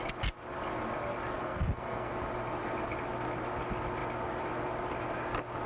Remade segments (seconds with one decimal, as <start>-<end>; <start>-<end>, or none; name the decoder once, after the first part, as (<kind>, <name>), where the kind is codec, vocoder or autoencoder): 1.4-2.1 (codec, SNAC)